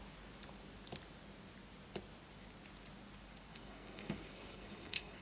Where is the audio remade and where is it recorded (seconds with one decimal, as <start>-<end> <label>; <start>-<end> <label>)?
0.0-3.5 recorded; 3.5-5.2 remade